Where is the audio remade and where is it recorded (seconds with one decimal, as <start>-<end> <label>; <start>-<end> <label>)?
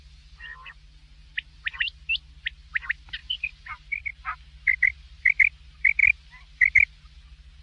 0.0-3.2 recorded; 3.2-4.0 remade; 4.0-4.7 recorded; 4.7-5.2 remade; 5.2-7.6 recorded